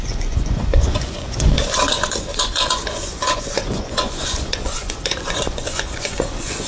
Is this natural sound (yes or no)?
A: no